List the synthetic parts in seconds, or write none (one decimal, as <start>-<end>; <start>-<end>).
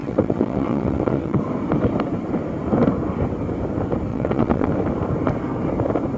0.0-1.4; 4.1-4.7